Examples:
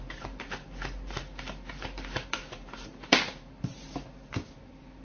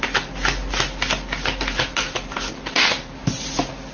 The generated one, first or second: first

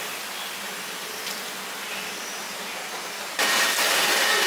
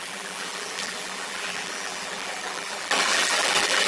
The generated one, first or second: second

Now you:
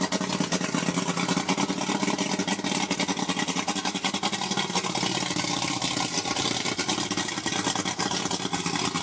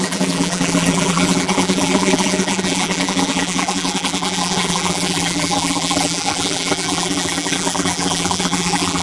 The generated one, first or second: second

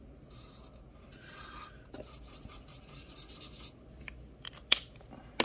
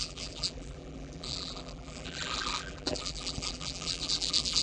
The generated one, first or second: second